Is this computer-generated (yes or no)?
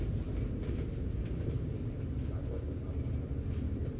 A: no